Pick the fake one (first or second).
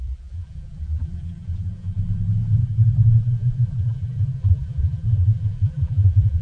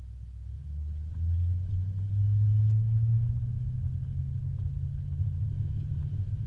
first